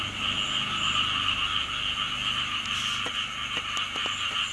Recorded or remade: recorded